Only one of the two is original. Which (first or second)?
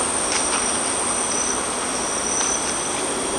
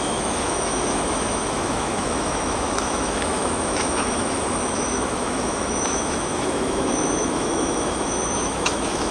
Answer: first